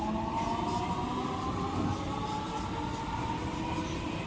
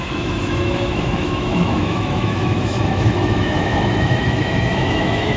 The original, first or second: first